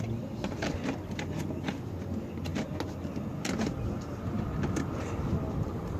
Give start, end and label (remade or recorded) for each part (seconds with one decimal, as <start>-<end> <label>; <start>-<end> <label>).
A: 0.0-6.0 recorded